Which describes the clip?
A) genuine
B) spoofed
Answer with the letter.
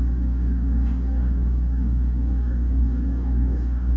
B